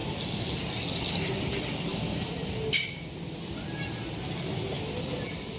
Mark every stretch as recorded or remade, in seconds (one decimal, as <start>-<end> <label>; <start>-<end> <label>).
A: 0.0-5.6 recorded